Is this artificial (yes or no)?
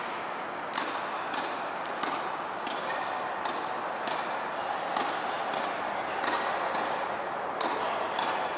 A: no